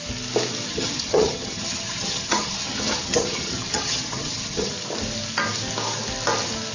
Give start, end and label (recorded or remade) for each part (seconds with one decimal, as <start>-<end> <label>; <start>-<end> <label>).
0.0-0.7 recorded; 0.7-4.7 remade; 4.7-6.7 recorded